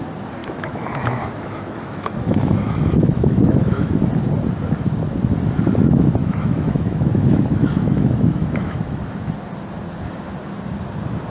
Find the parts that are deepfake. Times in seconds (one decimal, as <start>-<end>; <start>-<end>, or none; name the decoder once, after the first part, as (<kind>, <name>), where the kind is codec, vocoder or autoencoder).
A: 0.4-3.9 (autoencoder, DAC-VAE); 6.2-9.0